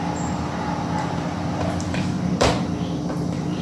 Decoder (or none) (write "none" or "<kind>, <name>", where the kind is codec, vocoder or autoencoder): vocoder, BigVGAN v2